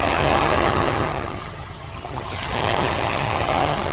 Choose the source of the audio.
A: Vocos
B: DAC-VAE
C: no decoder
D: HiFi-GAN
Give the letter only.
D